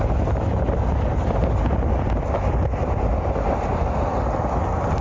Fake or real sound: real